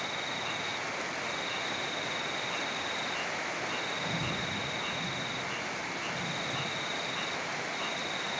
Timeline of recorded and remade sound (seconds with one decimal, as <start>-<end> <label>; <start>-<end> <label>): 0.0-8.4 recorded